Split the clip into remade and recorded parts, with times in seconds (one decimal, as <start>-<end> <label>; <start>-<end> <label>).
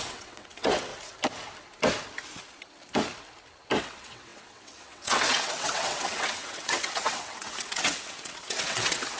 0.0-0.9 remade; 0.9-3.8 recorded; 3.8-9.2 remade